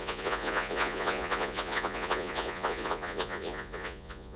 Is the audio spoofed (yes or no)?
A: yes